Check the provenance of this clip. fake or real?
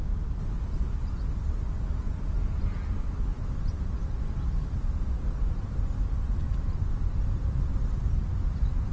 real